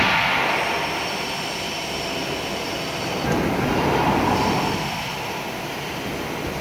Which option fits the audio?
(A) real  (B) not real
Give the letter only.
A